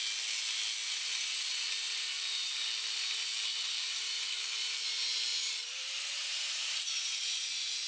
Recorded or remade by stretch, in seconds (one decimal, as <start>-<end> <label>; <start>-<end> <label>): 0.0-0.8 recorded; 0.8-2.6 remade; 2.6-3.5 recorded; 3.5-4.6 remade; 4.6-5.3 recorded; 5.3-6.7 remade; 6.7-7.9 recorded